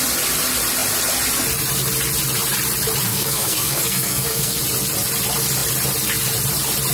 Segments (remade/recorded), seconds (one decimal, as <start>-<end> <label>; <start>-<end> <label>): 0.0-3.1 recorded; 3.1-4.6 remade; 4.6-6.9 recorded